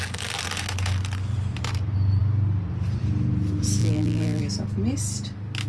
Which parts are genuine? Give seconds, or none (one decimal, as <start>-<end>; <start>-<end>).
0.0-3.8; 4.4-5.7